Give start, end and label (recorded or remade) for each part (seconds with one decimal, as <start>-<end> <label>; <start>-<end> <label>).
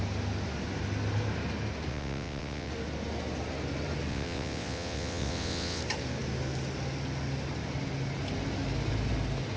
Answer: 0.0-1.9 recorded; 1.9-2.7 remade; 2.7-4.1 recorded; 4.1-5.8 remade; 5.8-9.6 recorded